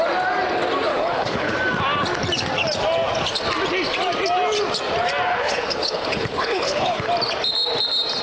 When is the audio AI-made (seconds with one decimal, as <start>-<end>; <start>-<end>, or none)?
0.9-1.5; 5.3-7.1